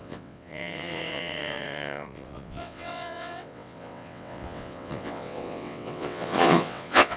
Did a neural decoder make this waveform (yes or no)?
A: yes